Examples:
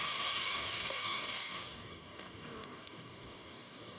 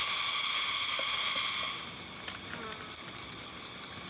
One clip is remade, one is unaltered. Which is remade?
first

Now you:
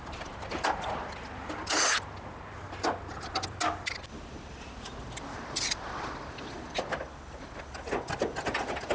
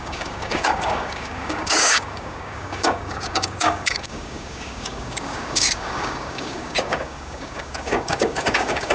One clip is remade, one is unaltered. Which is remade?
second